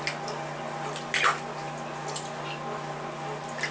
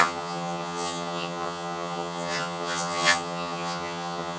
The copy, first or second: second